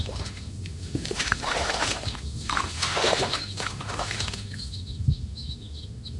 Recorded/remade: remade